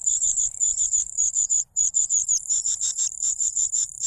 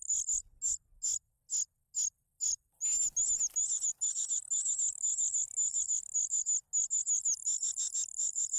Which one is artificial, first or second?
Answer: first